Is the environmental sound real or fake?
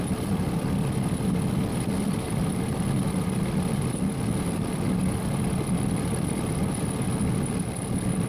real